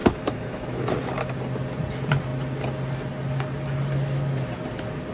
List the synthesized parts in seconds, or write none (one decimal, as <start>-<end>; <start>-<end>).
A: 0.0-0.9